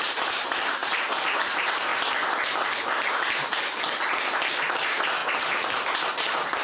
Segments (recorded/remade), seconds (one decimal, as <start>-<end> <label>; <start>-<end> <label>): 0.0-1.9 remade; 1.9-4.5 recorded; 4.5-6.6 remade